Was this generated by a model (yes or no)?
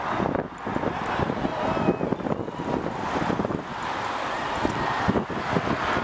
no